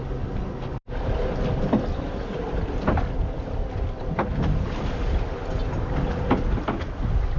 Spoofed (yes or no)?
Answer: no